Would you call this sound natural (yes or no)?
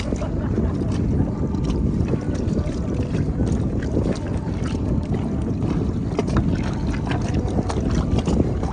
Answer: yes